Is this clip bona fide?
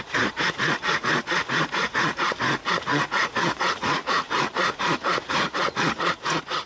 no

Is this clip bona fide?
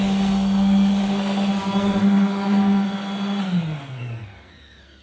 no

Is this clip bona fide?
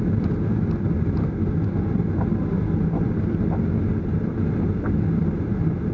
yes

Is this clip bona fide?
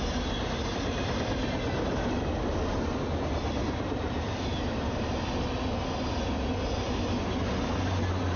yes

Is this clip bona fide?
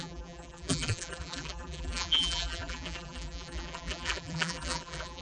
no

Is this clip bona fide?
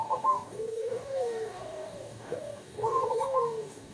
no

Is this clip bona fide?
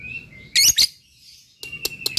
yes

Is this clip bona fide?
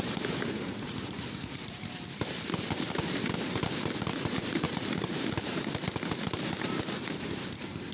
no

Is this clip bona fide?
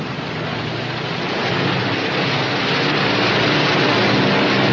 yes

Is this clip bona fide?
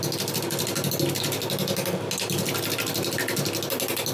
yes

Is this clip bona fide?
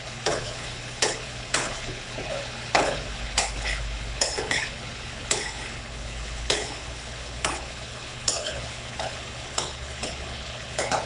no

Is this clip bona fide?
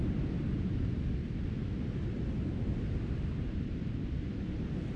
yes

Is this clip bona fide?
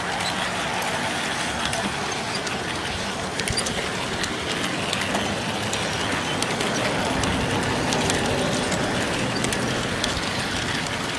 yes